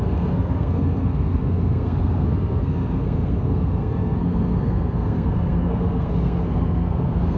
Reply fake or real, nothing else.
fake